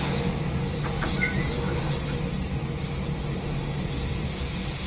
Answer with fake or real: real